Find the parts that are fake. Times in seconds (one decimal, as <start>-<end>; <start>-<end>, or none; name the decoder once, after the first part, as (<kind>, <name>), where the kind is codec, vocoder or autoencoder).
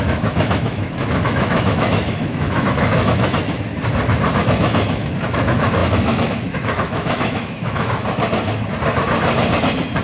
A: 0.0-3.7 (autoencoder, DAC-VAE); 4.4-8.0